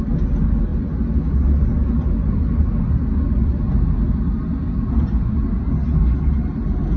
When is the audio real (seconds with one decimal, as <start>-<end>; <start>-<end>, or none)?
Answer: 0.0-7.0